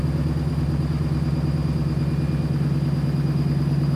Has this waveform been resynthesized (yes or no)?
no